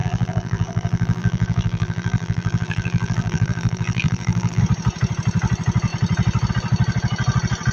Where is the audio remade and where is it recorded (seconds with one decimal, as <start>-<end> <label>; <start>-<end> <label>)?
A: 0.0-4.6 remade; 4.6-7.7 recorded